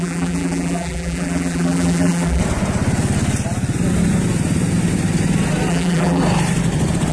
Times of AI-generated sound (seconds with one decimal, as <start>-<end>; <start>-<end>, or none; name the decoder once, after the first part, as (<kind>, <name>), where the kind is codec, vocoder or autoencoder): 0.0-2.4 (vocoder, BigVGAN v2); 5.7-6.2